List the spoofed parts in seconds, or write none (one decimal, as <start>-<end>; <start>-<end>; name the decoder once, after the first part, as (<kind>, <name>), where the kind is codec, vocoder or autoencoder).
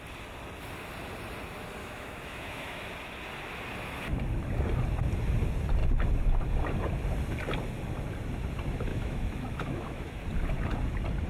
1.8-2.9 (autoencoder, DAC-VAE); 8.9-10.2